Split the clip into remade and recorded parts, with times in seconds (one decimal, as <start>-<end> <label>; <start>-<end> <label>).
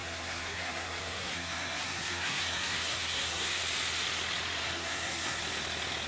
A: 0.0-3.6 remade; 3.6-4.6 recorded; 4.6-5.4 remade; 5.4-6.1 recorded